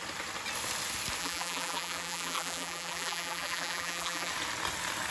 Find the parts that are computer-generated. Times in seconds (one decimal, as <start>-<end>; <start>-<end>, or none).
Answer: 1.2-4.3